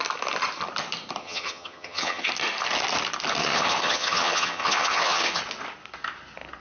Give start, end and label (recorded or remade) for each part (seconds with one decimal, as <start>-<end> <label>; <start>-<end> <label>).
0.0-1.2 recorded; 1.2-2.3 remade; 2.3-3.4 recorded; 3.4-5.4 remade; 5.4-6.6 recorded